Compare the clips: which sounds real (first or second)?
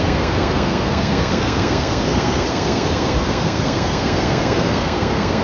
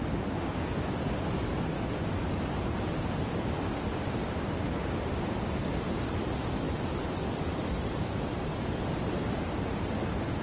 second